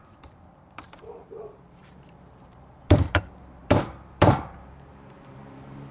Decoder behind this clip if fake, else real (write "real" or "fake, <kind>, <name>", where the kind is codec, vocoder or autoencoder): fake, vocoder, BigVGAN v2